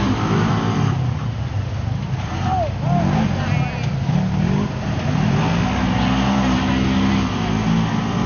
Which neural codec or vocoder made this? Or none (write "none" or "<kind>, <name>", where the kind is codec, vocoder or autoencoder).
none